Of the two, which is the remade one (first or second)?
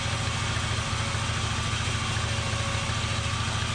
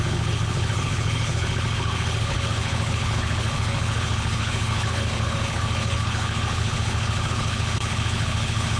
second